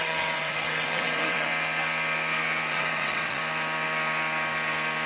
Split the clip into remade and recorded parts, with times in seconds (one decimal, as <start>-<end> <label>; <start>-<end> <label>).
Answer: 0.0-1.5 remade; 1.5-2.7 recorded; 2.7-3.4 remade; 3.4-5.1 recorded